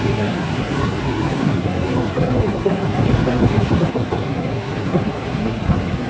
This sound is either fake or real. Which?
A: fake